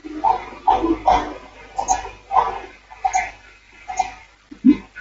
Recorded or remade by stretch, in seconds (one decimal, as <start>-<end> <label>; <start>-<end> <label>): 0.0-5.0 recorded